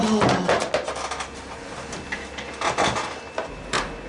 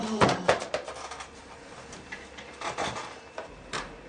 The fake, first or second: second